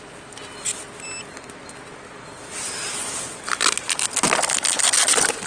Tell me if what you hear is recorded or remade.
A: recorded